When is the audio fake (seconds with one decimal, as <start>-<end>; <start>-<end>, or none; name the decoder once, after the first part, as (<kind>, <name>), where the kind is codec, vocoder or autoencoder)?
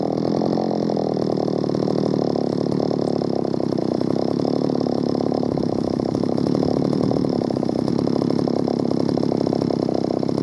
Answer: 3.8-7.9 (autoencoder, DAC-VAE)